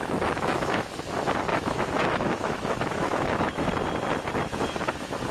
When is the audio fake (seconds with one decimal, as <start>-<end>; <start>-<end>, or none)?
0.0-0.9; 1.5-3.7